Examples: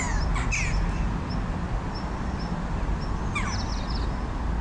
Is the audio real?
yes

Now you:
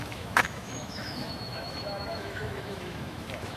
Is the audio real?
no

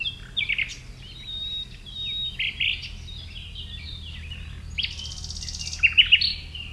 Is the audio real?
yes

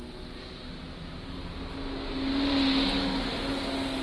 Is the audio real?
yes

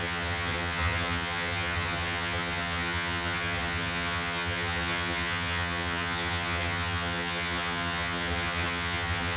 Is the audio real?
no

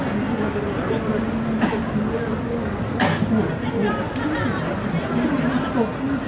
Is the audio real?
yes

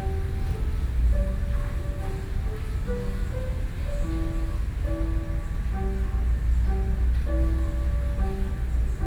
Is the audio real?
yes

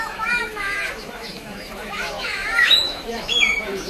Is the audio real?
no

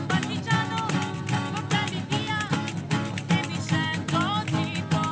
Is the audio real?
yes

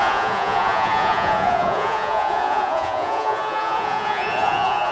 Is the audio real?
no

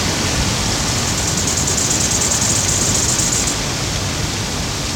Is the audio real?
yes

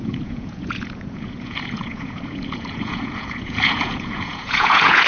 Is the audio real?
no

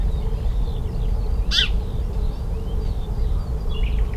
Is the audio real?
yes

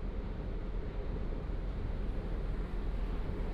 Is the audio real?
no